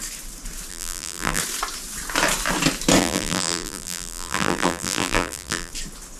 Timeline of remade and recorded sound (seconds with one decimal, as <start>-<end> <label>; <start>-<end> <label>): 0.0-0.7 recorded; 0.7-1.4 remade; 1.4-3.0 recorded; 3.0-5.7 remade; 5.7-6.2 recorded